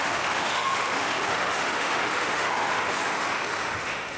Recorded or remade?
remade